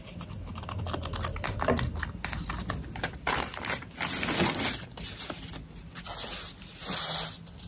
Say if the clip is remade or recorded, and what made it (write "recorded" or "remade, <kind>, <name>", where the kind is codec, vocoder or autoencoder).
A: recorded